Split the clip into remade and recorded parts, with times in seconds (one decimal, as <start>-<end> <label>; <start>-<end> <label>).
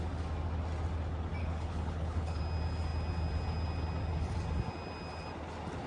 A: 0.0-1.4 recorded; 1.4-2.4 remade; 2.4-5.9 recorded